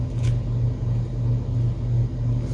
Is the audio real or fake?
real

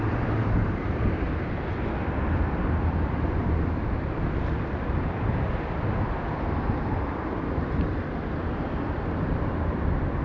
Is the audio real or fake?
fake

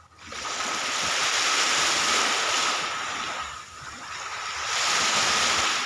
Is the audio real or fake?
real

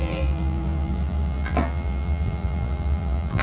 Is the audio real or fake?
fake